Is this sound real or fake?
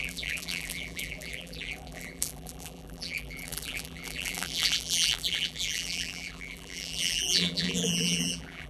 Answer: fake